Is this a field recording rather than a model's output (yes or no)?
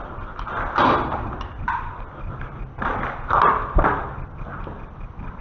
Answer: yes